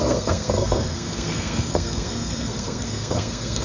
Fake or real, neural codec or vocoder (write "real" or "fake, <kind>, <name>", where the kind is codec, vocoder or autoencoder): fake, codec, SNAC